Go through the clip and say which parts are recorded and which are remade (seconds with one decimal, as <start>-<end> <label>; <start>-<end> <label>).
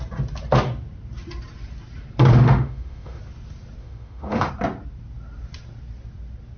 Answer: 0.0-2.3 recorded; 2.3-3.2 remade; 3.2-3.8 recorded; 3.8-4.5 remade; 4.5-6.6 recorded